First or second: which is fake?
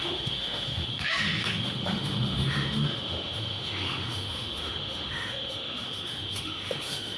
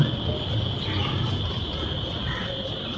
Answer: first